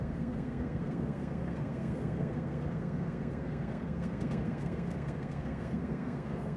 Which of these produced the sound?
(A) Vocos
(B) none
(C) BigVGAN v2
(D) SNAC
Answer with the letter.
D